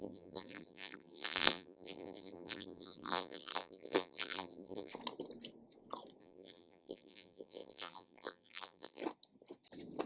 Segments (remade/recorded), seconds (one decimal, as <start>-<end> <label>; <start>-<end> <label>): 0.0-4.9 remade; 4.9-6.2 recorded; 6.2-9.0 remade; 9.0-10.1 recorded

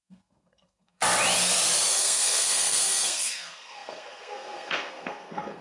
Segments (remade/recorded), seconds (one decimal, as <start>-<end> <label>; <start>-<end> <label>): 0.0-1.0 remade; 1.0-1.9 recorded; 1.9-5.6 remade

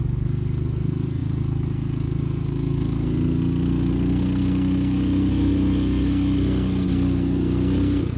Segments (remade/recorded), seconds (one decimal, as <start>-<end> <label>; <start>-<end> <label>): 0.0-8.2 remade

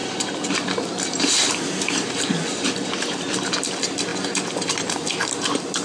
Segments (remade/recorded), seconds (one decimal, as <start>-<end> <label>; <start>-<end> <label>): 0.0-3.5 remade; 3.5-4.1 recorded; 4.1-4.8 remade; 4.8-5.8 recorded

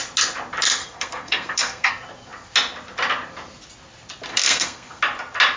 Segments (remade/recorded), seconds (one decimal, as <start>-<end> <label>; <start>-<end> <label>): 0.0-0.8 recorded; 0.8-1.9 remade; 1.9-4.3 recorded; 4.3-5.0 remade; 5.0-5.6 recorded

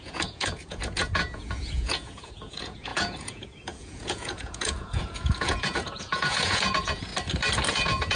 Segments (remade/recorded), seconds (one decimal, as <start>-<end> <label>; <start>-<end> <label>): 0.0-7.1 remade; 7.1-7.7 recorded; 7.7-8.2 remade

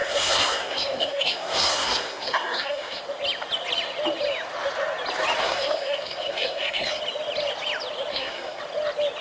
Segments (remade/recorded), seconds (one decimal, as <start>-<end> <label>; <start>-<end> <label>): 0.0-3.0 remade; 3.0-5.4 recorded; 5.4-7.0 remade; 7.0-8.1 recorded; 8.1-8.6 remade; 8.6-9.2 recorded